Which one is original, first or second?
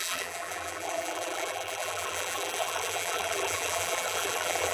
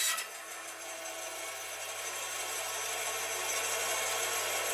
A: second